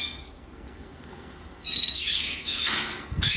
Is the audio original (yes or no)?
no